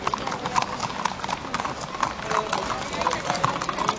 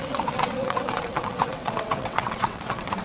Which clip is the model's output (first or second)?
second